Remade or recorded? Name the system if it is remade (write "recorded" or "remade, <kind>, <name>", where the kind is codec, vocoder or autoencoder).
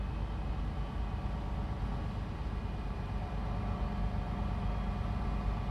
recorded